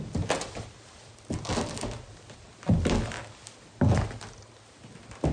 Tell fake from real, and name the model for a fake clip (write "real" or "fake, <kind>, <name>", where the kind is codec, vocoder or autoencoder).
real